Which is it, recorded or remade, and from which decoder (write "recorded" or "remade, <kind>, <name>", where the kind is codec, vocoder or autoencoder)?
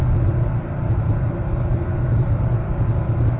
recorded